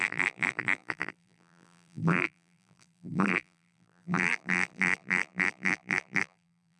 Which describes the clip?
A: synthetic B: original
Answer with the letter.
A